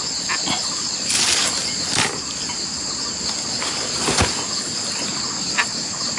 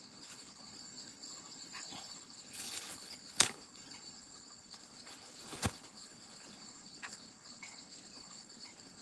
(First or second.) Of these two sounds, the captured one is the first